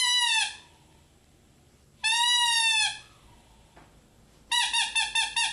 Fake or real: real